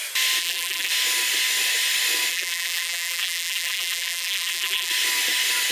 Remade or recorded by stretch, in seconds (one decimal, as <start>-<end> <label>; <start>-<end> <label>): 0.0-0.4 recorded; 0.4-0.9 remade; 0.9-2.3 recorded; 2.3-4.9 remade; 4.9-5.7 recorded